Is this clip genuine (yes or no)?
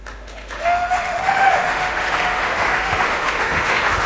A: no